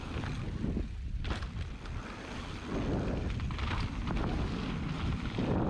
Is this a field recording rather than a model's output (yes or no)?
yes